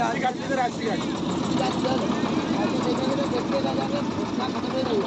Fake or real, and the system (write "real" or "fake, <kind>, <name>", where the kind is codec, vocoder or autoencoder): real